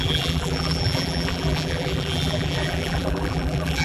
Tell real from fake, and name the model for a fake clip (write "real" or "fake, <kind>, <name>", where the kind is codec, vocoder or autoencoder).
fake, vocoder, BigVGAN v2